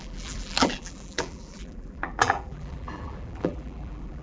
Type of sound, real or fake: fake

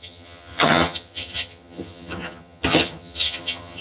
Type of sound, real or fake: fake